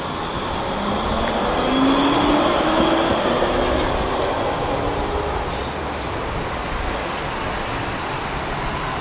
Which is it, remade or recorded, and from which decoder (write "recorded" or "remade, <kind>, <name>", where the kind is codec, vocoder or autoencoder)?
recorded